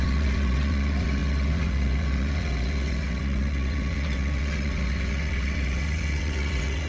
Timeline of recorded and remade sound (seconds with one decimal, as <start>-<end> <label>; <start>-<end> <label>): 0.0-6.9 remade